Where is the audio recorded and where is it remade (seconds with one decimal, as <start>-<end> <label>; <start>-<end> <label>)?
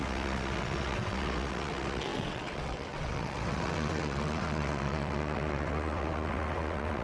0.0-7.0 remade